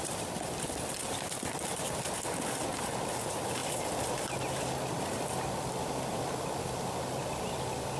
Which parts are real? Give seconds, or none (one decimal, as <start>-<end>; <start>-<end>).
0.0-3.6; 4.1-4.9